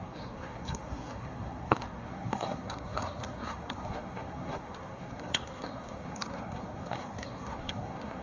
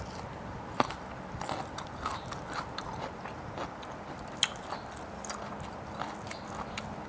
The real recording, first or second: second